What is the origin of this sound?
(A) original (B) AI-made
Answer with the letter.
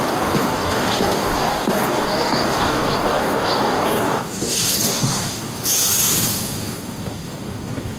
B